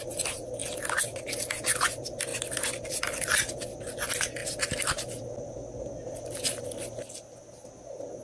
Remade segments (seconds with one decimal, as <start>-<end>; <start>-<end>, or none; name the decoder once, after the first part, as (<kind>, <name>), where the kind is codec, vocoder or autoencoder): none